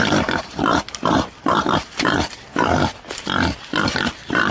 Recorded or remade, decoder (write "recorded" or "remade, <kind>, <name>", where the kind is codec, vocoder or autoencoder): recorded